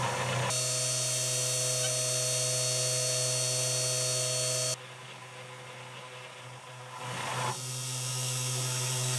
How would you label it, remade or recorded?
recorded